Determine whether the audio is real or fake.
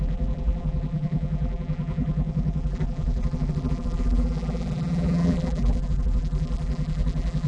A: fake